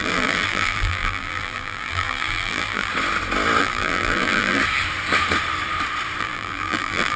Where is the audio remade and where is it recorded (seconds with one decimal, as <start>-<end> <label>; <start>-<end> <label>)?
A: 0.0-2.9 remade; 2.9-3.6 recorded; 3.6-4.6 remade; 4.6-6.2 recorded; 6.2-7.2 remade